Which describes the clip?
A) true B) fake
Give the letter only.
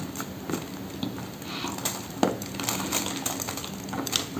A